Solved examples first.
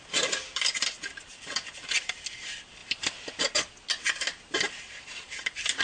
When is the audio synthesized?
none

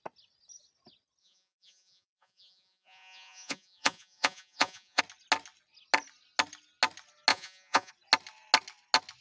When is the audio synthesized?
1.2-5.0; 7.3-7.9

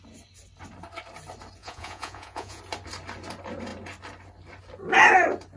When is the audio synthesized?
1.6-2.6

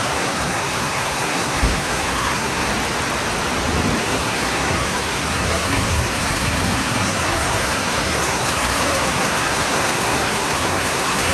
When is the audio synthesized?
0.0-2.7; 4.0-11.3

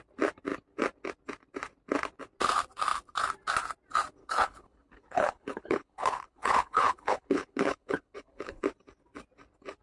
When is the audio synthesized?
4.2-8.6